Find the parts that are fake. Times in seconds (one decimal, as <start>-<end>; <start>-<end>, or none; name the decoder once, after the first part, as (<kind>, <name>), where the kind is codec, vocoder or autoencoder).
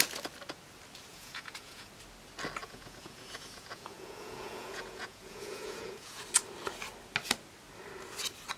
1.1-1.9 (vocoder, Vocos); 2.6-6.2